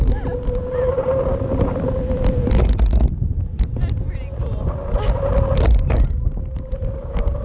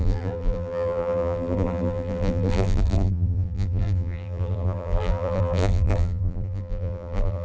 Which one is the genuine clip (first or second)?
first